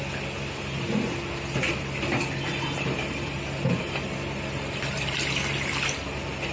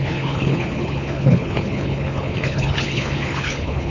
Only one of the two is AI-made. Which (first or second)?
second